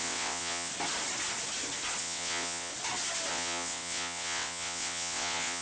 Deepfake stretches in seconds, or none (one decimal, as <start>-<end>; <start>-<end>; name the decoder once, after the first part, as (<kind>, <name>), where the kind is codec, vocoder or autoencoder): 0.0-0.7 (vocoder, WaveNeXt); 2.0-2.7; 3.3-5.6